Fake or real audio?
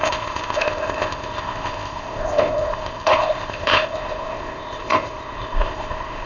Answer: fake